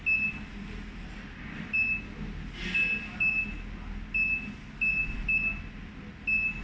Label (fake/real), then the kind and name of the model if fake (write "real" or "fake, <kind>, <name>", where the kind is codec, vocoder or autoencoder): real